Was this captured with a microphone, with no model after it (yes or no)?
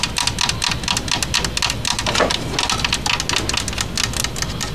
yes